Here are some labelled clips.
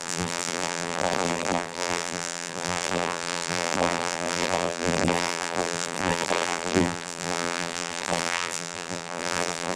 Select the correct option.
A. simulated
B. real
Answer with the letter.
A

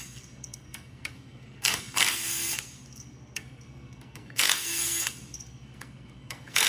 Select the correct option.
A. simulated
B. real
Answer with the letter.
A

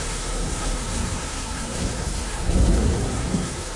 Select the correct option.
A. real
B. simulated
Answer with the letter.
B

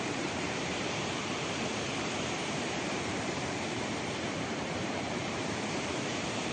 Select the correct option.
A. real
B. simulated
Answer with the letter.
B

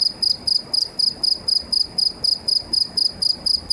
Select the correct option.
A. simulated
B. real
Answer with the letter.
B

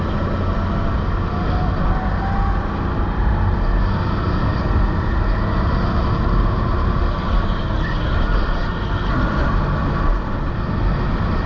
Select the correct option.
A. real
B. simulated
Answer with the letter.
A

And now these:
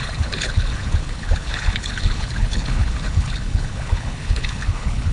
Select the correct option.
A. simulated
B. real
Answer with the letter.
A